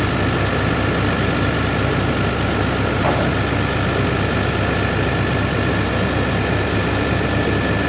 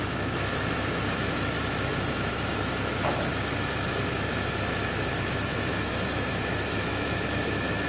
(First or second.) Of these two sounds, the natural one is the first